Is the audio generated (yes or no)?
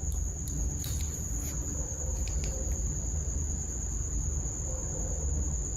no